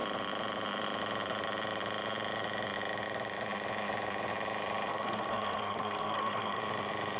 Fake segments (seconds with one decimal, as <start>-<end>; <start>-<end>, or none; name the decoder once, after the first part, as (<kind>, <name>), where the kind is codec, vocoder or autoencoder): 4.9-6.6 (codec, SNAC)